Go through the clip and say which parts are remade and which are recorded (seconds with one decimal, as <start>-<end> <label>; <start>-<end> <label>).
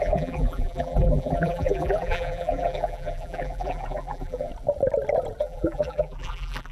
0.0-4.5 remade; 4.5-5.4 recorded; 5.4-6.7 remade